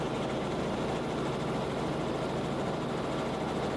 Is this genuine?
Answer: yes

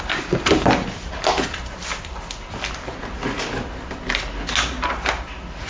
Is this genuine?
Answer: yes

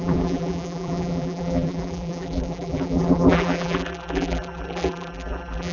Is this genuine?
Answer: no